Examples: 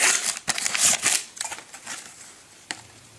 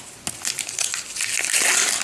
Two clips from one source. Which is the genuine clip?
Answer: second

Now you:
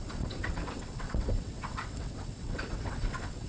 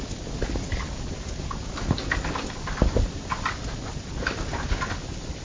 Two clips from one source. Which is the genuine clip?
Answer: second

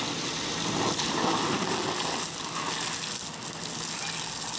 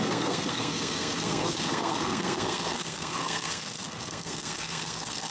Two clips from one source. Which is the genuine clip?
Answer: first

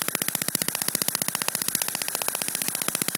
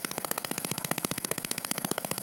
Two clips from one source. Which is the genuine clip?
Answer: first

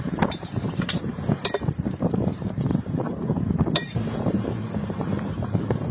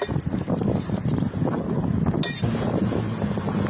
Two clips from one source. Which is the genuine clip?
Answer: second